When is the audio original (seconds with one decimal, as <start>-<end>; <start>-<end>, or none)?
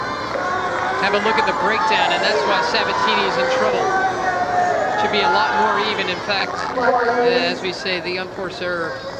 0.0-6.4; 7.1-9.2